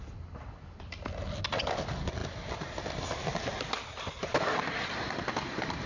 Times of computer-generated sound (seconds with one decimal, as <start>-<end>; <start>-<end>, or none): none